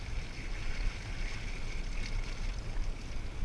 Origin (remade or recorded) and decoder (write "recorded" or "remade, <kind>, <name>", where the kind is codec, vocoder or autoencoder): recorded